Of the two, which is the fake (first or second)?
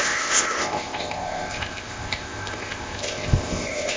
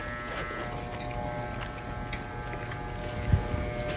first